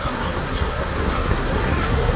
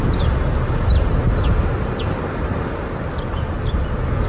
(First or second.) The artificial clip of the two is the first